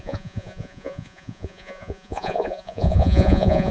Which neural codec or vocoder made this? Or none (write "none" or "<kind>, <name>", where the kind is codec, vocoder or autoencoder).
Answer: vocoder, Vocos